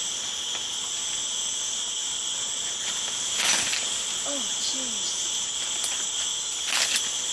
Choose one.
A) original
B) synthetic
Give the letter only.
A